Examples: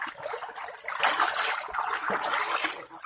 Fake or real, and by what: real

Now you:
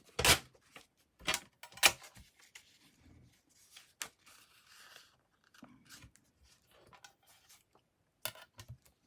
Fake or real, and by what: real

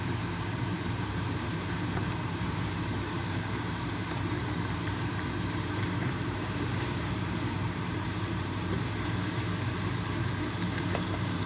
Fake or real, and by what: fake, vocoder, BigVGAN v2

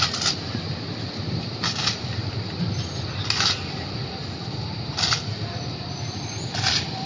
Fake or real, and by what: fake, vocoder, BigVGAN v2